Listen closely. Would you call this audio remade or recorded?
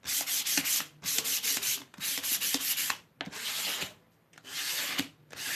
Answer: recorded